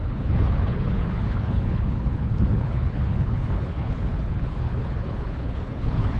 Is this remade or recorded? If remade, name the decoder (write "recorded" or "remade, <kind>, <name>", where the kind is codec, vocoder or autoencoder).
remade, codec, HILCodec